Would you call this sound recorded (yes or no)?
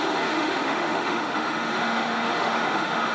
no